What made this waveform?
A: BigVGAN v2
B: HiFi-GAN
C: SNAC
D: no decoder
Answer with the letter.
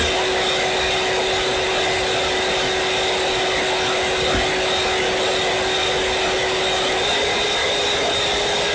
D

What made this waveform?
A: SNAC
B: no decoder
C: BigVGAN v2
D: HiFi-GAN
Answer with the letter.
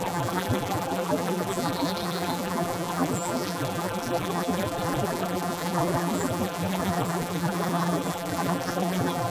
C